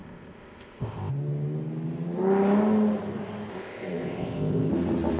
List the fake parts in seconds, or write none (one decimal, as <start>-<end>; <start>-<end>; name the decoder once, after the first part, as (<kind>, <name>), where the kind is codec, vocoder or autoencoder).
0.0-1.1 (codec, ZipCodec); 3.5-4.7